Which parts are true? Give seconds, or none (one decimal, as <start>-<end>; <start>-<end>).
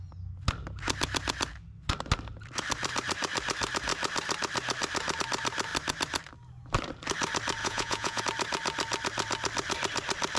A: 0.0-7.6; 8.2-10.4